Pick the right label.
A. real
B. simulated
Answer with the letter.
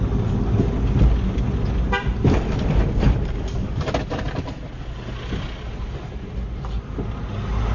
A